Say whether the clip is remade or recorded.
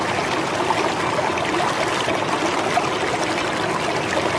recorded